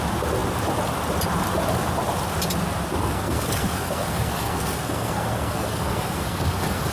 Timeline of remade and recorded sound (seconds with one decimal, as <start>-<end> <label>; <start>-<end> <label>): 0.0-3.0 recorded; 3.0-6.9 remade